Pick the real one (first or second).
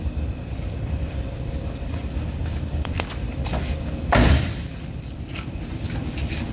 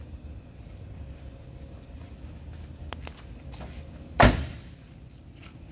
second